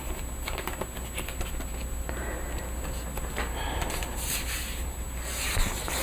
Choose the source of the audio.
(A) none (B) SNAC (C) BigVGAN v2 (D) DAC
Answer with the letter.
A